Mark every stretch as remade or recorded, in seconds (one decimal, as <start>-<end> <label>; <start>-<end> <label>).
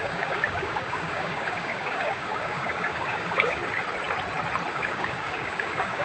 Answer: 0.0-3.6 remade; 3.6-4.7 recorded; 4.7-6.0 remade